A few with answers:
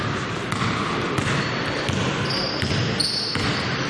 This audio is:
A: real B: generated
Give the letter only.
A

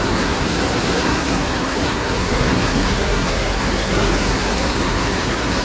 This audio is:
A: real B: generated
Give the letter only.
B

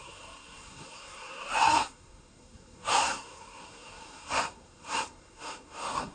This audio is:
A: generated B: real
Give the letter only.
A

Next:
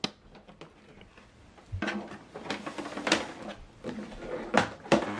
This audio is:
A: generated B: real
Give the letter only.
B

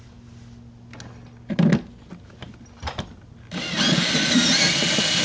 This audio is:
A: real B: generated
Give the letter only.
A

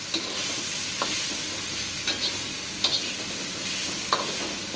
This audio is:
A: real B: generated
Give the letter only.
A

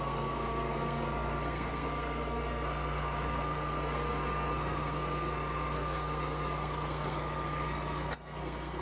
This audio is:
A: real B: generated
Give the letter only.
B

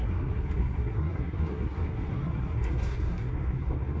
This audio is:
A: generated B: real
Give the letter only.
A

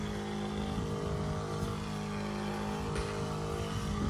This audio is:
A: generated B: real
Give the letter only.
B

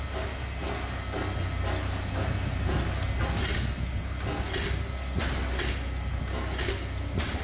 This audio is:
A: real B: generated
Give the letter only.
A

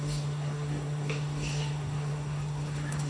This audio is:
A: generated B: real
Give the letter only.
A